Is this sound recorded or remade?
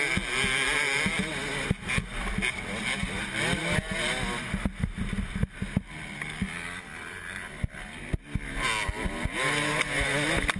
recorded